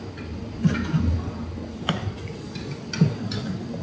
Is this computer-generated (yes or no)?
no